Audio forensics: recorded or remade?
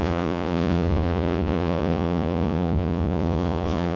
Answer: remade